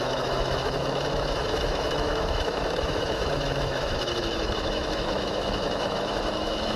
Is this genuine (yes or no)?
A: no